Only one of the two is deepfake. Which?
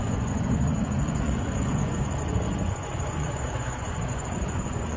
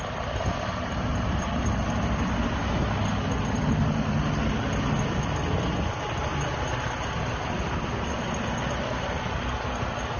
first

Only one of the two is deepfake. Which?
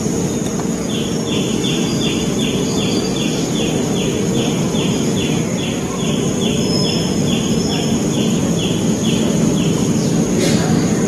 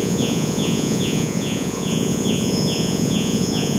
second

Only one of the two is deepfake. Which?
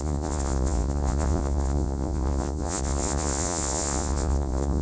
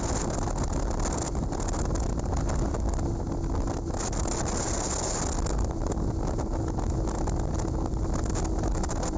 first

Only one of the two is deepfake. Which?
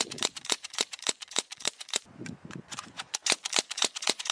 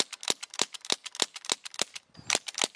first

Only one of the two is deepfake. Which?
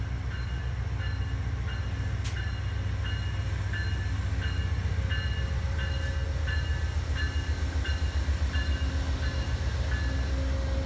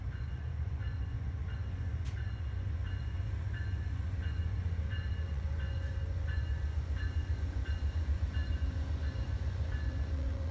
second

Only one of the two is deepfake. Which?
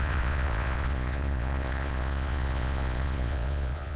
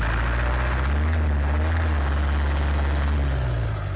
first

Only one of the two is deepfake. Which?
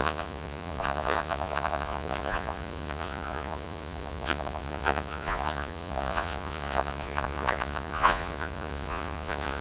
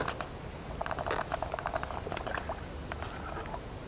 first